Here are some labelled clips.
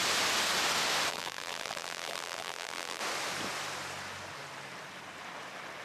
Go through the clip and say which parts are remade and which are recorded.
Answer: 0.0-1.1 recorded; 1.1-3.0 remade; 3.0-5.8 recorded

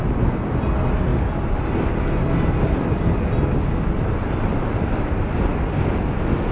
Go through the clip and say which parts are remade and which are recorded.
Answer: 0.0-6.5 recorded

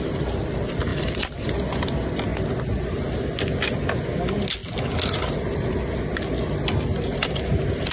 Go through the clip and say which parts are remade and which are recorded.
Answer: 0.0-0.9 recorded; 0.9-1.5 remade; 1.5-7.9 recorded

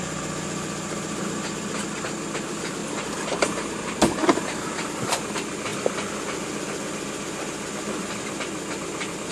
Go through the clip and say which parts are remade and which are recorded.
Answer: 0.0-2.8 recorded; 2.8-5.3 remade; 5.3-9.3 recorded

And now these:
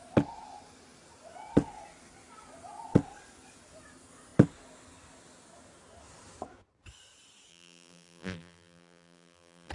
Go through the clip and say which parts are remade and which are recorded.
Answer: 0.0-7.5 recorded; 7.5-9.7 remade

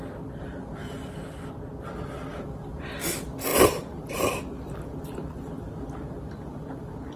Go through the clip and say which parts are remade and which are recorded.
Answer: 0.0-0.8 remade; 0.8-1.8 recorded; 1.8-7.2 remade

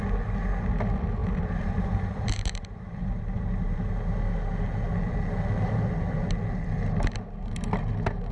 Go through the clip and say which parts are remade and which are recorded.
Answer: 0.0-1.2 recorded; 1.2-3.9 remade; 3.9-8.3 recorded

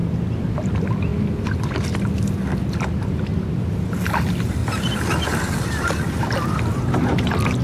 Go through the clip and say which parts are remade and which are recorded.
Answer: 0.0-0.5 remade; 0.5-1.1 recorded; 1.1-2.6 remade; 2.6-7.6 recorded